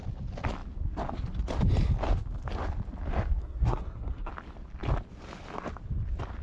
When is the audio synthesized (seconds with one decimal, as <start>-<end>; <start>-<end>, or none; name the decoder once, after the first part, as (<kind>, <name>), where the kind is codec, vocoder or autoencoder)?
3.4-4.3 (codec, SNAC)